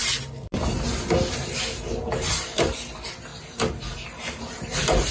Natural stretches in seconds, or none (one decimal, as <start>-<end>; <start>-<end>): 0.0-2.0; 2.7-3.3